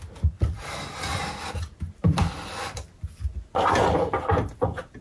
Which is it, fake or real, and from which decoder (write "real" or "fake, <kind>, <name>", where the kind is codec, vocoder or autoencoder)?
real